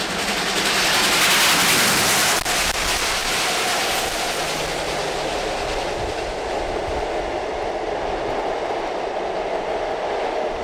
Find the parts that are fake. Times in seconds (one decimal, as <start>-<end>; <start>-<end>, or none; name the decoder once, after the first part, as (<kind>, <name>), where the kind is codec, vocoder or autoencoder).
none